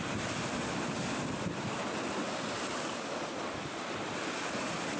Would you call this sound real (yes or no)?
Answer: yes